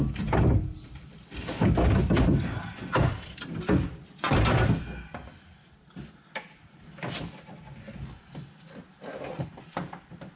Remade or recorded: recorded